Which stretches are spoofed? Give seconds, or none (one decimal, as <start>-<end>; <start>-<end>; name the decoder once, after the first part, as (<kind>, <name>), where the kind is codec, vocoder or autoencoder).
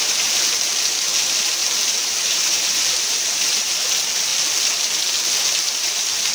1.6-3.7 (vocoder, BigVGAN v2)